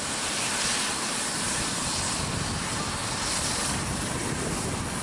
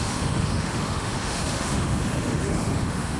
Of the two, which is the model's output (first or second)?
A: second